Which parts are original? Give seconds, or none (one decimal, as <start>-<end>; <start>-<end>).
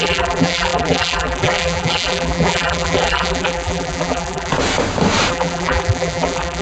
4.5-5.3